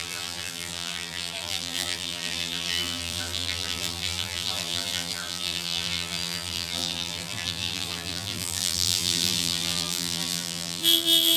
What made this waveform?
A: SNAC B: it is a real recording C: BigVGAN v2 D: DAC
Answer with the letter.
C